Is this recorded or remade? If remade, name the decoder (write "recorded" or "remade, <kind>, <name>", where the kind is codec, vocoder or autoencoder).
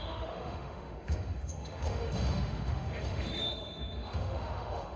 remade, autoencoder, DAC-VAE